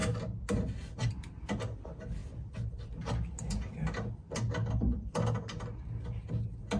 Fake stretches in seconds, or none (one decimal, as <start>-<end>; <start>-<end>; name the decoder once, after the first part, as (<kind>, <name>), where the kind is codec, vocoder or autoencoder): none